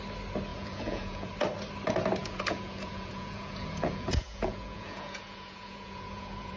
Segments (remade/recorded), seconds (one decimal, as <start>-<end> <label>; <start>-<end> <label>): 0.0-0.5 recorded; 0.5-1.3 remade; 1.3-2.2 recorded; 2.2-6.6 remade